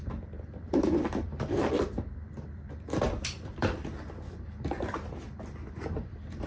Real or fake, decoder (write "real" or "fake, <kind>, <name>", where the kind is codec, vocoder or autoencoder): fake, vocoder, BigVGAN v2